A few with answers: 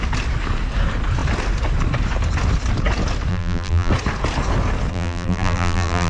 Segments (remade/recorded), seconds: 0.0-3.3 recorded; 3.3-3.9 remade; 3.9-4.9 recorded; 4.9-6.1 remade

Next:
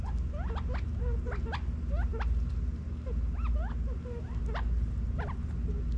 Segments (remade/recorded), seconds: 0.0-6.0 recorded

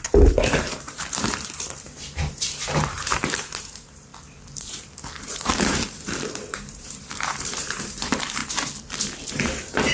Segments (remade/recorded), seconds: 0.0-4.1 remade; 4.1-5.2 recorded; 5.2-8.4 remade; 8.4-9.3 recorded; 9.3-9.9 remade